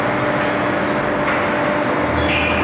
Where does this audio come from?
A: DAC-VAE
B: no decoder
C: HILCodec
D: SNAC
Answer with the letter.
B